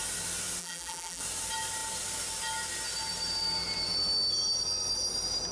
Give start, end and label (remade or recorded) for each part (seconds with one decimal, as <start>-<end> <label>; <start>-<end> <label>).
0.0-0.6 recorded; 0.6-1.2 remade; 1.2-5.5 recorded